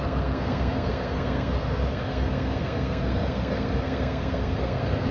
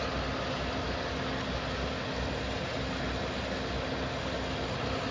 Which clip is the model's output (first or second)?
first